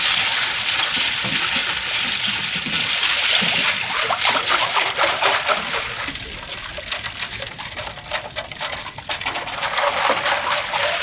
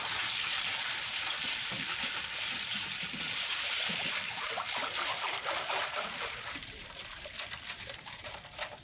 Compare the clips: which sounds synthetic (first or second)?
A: second